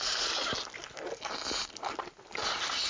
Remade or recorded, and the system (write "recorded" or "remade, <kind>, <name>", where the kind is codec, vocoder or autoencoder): recorded